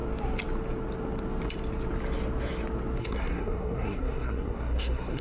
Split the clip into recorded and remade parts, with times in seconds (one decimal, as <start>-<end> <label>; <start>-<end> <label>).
0.0-3.0 recorded; 3.0-5.2 remade